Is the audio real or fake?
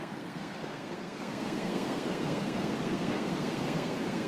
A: fake